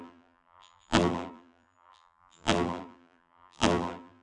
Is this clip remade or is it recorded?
remade